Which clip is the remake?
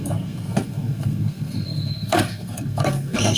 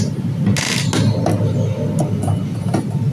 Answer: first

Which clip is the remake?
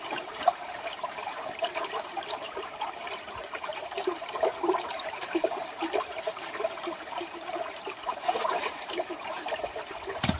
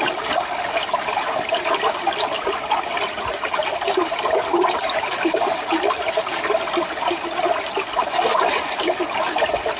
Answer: first